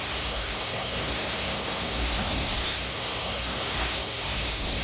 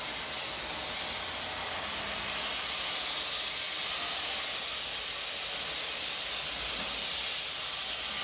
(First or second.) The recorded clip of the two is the second